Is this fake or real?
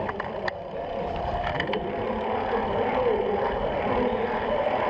fake